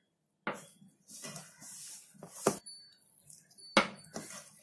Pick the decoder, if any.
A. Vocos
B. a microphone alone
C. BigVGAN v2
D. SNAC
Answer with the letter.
B